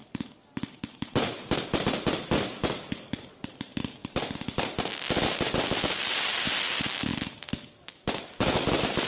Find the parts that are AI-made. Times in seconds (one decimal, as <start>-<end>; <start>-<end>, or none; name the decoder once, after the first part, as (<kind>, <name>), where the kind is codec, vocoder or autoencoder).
none